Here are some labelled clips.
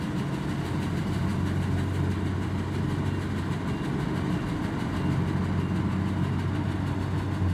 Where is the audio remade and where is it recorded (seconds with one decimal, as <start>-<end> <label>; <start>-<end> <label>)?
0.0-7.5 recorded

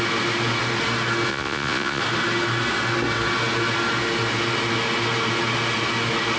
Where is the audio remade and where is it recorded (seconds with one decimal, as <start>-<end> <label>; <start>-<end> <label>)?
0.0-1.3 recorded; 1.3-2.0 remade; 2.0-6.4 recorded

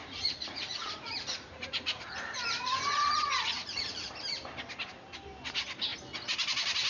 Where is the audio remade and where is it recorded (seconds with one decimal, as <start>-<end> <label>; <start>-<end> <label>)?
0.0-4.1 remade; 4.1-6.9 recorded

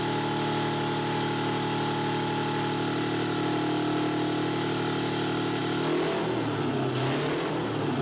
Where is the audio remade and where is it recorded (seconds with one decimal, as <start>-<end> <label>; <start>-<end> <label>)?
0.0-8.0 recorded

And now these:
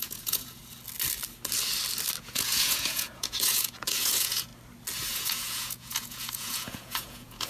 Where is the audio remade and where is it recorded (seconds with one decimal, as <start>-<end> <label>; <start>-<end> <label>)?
0.0-0.6 remade; 0.6-2.2 recorded; 2.2-4.5 remade; 4.5-5.1 recorded; 5.1-7.5 remade

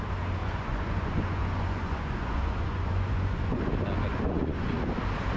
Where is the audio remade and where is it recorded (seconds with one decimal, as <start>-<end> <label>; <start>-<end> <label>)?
0.0-0.4 recorded; 0.4-3.6 remade; 3.6-4.1 recorded; 4.1-4.7 remade; 4.7-5.4 recorded

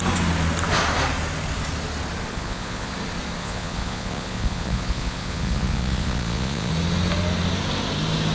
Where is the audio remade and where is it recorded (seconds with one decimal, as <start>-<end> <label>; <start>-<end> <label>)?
0.0-2.3 recorded; 2.3-2.9 remade; 2.9-3.4 recorded; 3.4-6.7 remade; 6.7-8.3 recorded